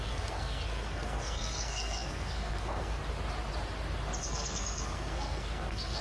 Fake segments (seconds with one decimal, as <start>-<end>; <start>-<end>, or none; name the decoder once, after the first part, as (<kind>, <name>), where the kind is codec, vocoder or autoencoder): 0.0-3.0 (codec, SNAC); 4.2-6.0